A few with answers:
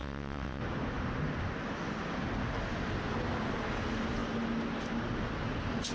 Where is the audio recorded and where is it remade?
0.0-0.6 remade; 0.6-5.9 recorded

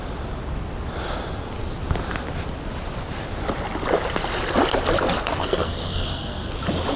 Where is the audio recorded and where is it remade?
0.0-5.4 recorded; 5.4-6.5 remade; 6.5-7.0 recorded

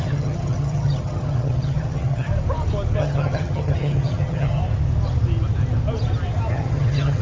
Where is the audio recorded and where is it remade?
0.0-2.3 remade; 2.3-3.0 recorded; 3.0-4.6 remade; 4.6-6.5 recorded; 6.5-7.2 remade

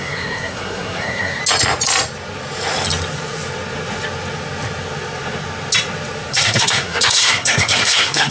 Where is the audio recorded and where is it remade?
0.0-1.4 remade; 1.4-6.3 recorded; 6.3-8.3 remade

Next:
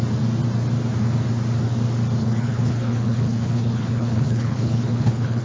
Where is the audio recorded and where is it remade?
0.0-2.2 recorded; 2.2-5.4 remade

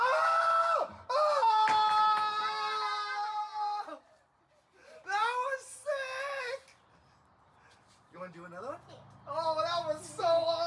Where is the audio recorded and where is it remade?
0.0-10.7 recorded

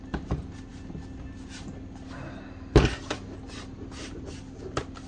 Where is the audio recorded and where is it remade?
0.0-5.1 recorded

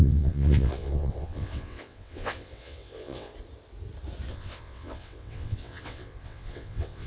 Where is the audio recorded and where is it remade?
0.0-3.3 remade; 3.3-4.3 recorded; 4.3-7.1 remade